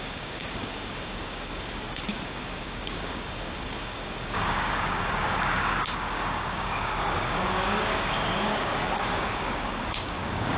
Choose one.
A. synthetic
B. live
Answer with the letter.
A